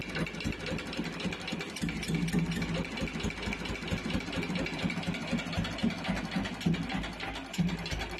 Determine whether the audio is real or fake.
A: real